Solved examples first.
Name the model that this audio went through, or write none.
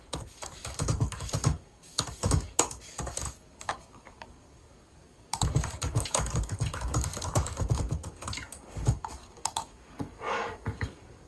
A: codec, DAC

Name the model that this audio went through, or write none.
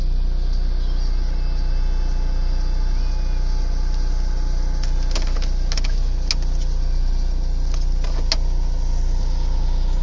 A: none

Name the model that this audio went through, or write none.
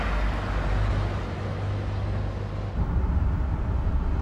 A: none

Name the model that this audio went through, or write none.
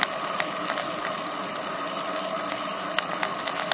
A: none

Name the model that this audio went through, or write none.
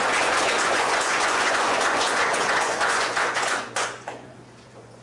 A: vocoder, Vocos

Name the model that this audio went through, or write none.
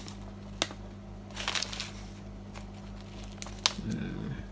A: none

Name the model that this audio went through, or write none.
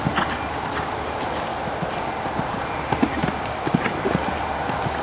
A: none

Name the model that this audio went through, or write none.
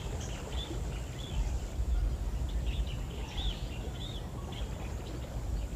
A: vocoder, BigVGAN v2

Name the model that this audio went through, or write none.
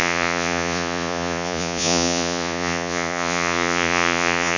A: vocoder, Vocos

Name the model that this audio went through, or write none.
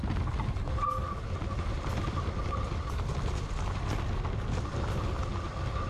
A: none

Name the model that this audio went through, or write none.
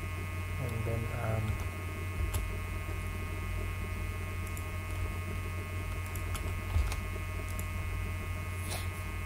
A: none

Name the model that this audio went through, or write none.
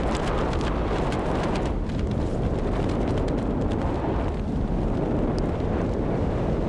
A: none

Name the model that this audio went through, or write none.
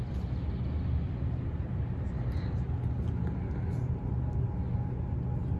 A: none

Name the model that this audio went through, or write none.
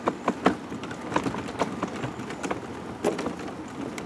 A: none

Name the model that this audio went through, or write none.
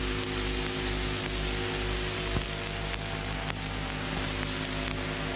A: none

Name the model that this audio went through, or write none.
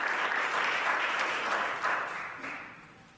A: none